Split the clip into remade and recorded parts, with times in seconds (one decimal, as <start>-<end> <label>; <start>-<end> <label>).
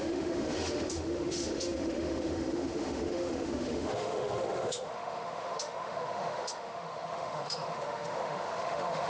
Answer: 0.0-9.1 remade